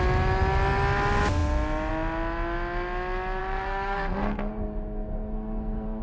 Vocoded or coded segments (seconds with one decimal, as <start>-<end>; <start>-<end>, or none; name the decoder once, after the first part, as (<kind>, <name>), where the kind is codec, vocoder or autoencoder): 3.4-6.0 (codec, SNAC)